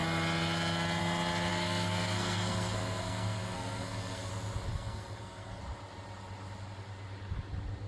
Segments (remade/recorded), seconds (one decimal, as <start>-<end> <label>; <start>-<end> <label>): 0.0-1.5 recorded; 1.5-4.3 remade; 4.3-4.7 recorded; 4.7-5.6 remade; 5.6-7.9 recorded